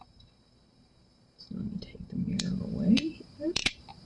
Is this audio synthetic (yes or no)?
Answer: yes